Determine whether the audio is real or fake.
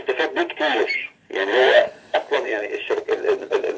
fake